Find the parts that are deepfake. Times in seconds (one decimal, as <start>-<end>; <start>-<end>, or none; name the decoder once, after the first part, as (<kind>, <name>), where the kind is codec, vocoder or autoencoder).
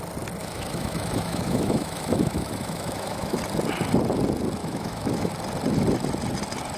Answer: 0.4-3.4 (autoencoder, DAC-VAE); 4.6-5.3